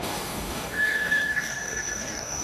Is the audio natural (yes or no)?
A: no